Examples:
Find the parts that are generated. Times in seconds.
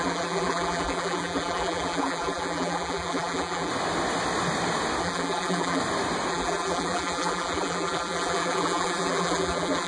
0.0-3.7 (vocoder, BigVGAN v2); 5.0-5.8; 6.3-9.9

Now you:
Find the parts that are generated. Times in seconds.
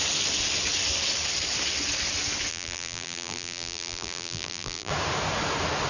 2.5-4.9 (vocoder, BigVGAN v2)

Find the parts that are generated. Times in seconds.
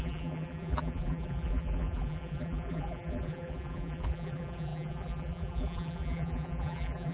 0.0-7.1 (vocoder, BigVGAN v2)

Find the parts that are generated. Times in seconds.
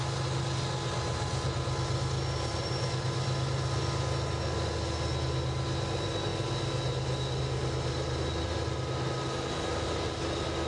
none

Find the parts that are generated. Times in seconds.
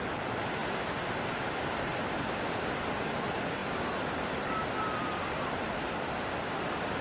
0.0-7.0 (vocoder, BigVGAN v2)